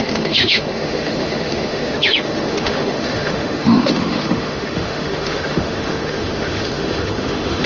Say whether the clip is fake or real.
fake